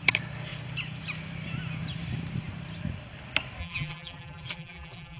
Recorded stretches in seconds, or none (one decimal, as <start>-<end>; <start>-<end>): 0.0-3.6